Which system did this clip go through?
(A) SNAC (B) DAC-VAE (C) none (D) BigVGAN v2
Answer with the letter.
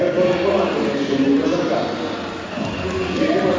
C